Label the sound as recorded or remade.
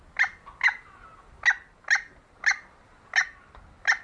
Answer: recorded